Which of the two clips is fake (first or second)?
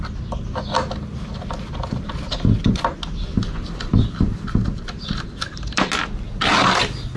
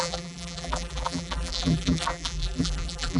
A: second